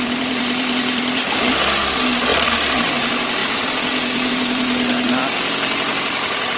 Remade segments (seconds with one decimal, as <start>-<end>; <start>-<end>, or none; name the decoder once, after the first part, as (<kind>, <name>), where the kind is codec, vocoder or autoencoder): 0.0-2.3 (vocoder, BigVGAN v2); 2.8-6.6